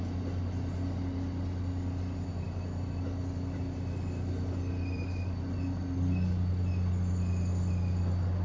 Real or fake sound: real